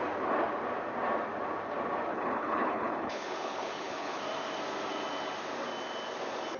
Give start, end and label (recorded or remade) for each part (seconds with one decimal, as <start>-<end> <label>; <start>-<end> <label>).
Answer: 0.0-2.1 recorded; 2.1-4.2 remade; 4.2-6.6 recorded